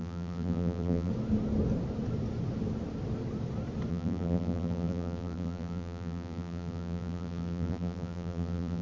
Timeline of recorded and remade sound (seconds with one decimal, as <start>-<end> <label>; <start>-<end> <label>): 0.0-1.1 remade; 1.1-3.9 recorded; 3.9-8.8 remade